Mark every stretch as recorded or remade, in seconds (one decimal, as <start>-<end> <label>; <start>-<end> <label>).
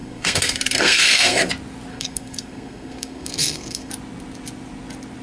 0.0-1.5 remade; 1.5-1.9 recorded; 1.9-3.9 remade; 3.9-5.2 recorded